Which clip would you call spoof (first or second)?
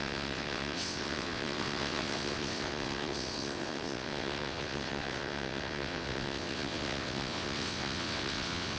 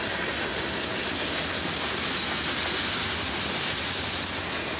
first